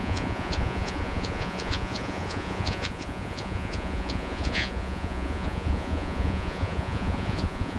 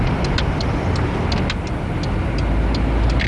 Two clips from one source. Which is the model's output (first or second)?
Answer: first